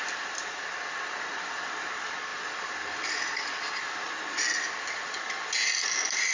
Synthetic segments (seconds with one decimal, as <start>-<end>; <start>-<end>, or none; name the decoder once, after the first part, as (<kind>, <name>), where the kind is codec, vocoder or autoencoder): none